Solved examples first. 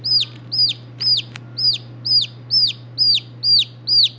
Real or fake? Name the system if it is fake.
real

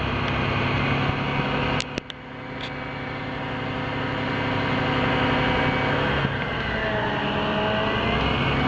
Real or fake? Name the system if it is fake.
real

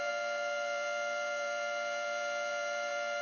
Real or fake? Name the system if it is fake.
fake, vocoder, BigVGAN v2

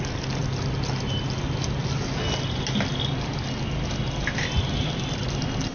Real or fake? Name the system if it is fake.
real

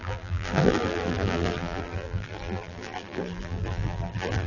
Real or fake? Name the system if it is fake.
fake, vocoder, BigVGAN v2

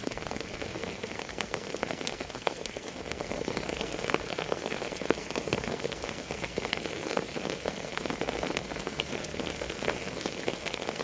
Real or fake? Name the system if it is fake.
fake, codec, SNAC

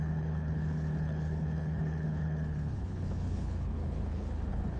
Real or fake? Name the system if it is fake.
fake, codec, HILCodec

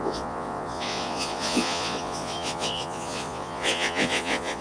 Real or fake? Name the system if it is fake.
fake, vocoder, Vocos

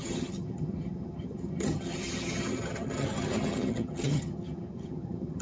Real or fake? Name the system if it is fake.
fake, vocoder, HiFi-GAN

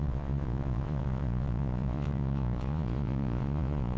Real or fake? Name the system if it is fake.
fake, vocoder, Vocos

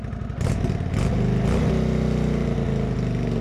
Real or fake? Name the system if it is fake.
real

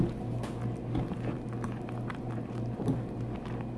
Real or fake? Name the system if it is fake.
real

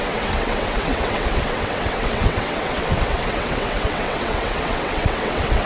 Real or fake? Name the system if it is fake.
fake, vocoder, WaveNeXt